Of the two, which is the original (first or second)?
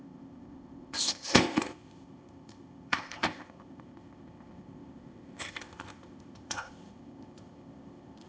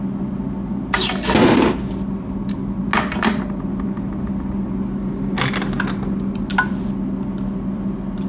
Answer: second